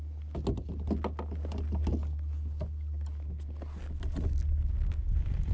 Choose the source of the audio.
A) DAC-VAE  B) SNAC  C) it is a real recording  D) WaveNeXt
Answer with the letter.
C